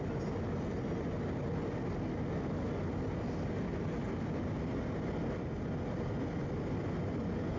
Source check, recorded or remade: recorded